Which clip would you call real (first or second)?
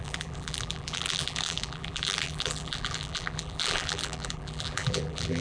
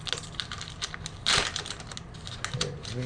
second